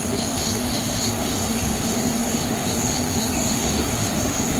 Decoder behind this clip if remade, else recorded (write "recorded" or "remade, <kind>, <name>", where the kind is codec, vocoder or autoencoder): remade, autoencoder, DAC-VAE